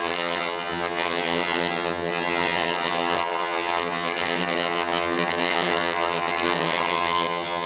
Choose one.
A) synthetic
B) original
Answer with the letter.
A